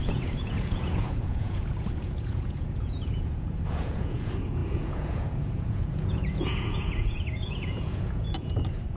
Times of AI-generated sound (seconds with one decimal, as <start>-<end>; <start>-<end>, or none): 0.0-9.0